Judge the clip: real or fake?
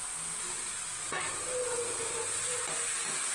real